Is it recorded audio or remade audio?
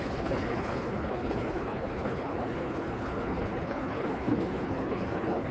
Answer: remade